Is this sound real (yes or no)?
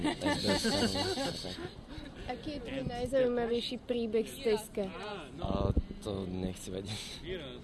yes